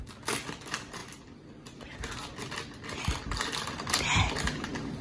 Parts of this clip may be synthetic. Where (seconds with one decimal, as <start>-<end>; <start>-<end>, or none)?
none

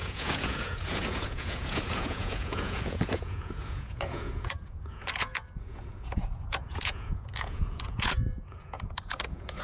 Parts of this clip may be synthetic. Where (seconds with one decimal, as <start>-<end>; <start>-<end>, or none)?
0.0-9.6

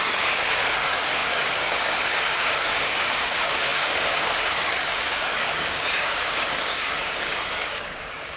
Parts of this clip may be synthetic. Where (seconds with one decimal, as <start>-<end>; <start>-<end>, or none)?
0.0-8.4

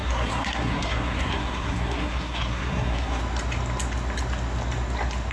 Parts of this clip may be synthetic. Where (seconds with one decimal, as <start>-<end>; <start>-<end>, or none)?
0.0-3.2

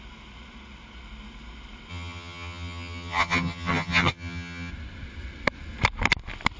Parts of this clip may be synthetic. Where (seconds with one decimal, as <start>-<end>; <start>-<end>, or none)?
1.9-4.7

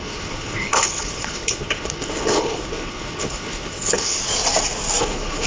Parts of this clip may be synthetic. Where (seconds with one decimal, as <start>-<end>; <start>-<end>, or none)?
0.0-4.2; 5.0-5.5

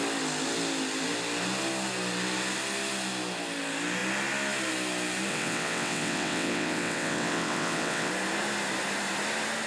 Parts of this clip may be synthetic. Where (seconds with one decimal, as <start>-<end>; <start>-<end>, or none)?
5.3-8.1